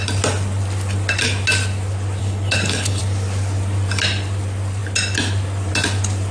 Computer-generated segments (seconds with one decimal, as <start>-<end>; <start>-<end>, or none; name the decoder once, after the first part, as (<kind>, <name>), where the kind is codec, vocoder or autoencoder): 2.2-3.0 (codec, HILCodec)